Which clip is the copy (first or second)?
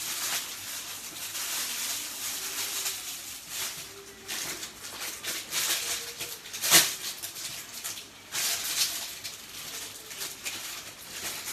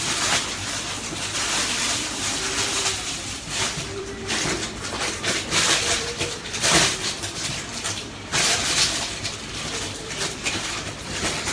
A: second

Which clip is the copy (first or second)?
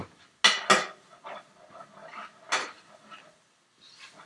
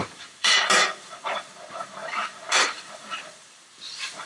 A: second